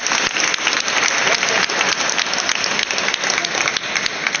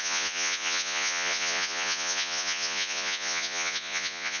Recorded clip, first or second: first